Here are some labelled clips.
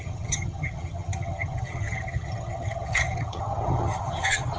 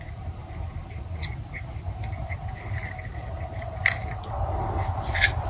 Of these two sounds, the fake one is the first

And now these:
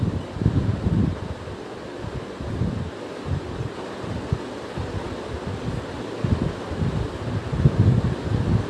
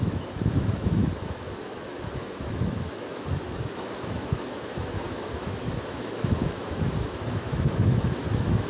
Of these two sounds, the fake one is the second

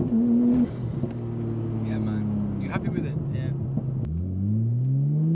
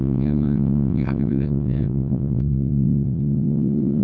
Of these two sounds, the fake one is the second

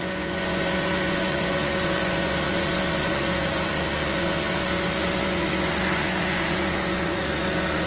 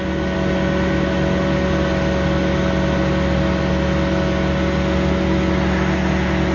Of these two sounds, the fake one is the first